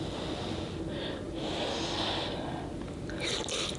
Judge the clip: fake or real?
real